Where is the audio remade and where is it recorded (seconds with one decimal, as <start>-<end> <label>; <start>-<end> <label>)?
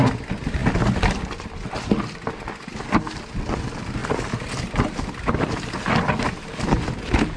0.0-4.0 recorded; 4.0-5.3 remade; 5.3-7.4 recorded